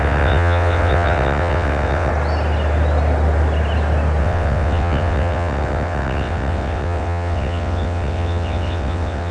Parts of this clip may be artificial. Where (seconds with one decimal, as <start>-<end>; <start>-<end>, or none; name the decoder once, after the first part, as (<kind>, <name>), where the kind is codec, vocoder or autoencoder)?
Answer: 0.0-2.1 (vocoder, WaveNeXt); 4.2-9.3